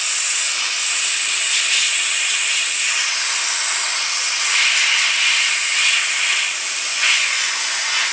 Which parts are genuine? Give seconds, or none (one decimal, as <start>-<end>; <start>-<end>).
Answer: 0.0-6.9